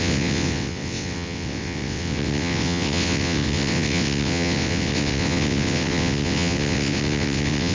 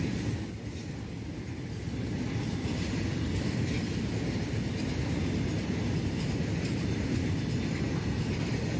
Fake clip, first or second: first